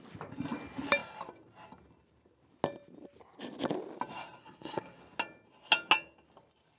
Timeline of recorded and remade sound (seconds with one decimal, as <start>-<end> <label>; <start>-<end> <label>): 0.0-4.4 recorded; 4.4-5.0 remade; 5.0-6.8 recorded